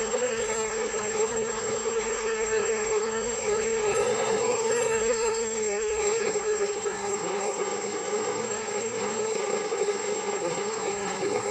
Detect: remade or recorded remade